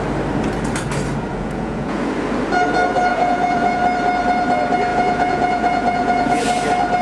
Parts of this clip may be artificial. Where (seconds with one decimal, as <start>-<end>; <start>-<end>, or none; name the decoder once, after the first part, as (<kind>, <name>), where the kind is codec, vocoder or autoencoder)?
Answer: 1.3-2.1 (vocoder, Vocos); 3.1-3.8; 4.9-6.4